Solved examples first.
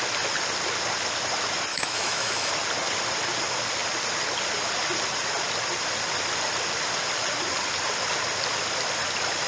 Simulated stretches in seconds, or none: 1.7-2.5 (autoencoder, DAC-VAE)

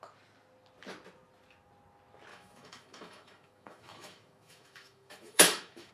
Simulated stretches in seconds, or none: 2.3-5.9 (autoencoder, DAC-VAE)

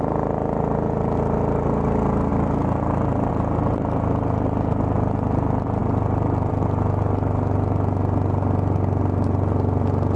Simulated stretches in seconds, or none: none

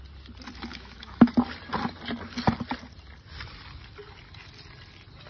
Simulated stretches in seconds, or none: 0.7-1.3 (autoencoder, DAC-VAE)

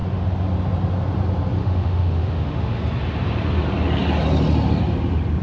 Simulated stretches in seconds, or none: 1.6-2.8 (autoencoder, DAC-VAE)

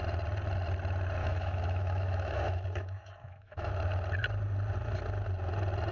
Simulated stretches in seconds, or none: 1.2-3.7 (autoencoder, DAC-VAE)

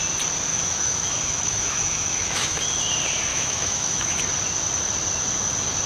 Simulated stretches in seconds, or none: 0.5-2.6 (autoencoder, DAC-VAE); 3.3-4.2